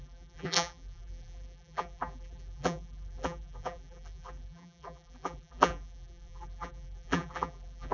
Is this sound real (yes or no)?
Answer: no